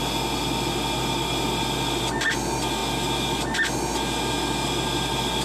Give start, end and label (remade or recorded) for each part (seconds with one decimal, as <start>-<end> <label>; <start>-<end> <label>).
0.0-5.4 recorded